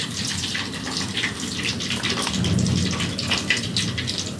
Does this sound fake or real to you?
real